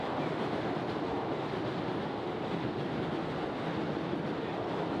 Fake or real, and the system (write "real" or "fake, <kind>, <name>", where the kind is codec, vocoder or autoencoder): real